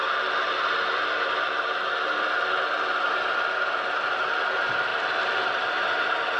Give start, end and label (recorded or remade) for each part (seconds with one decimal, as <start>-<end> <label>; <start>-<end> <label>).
0.0-6.4 recorded